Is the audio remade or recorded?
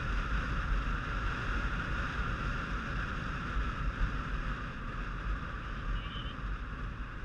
recorded